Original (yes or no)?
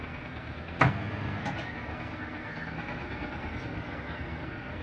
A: no